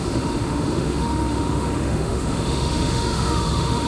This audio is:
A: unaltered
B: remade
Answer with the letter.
B